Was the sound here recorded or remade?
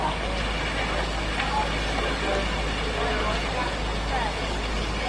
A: recorded